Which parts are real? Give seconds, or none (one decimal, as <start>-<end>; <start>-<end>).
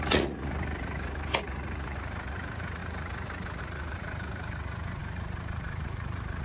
none